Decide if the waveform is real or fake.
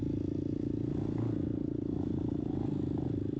real